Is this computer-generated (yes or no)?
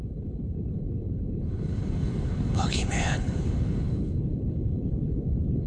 yes